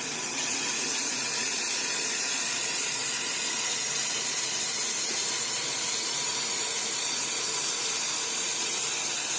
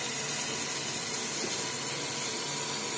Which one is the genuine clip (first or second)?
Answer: second